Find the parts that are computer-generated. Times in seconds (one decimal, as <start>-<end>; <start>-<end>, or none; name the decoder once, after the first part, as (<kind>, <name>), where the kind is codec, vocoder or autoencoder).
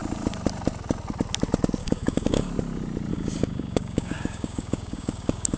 1.8-2.5 (codec, DAC); 3.1-5.6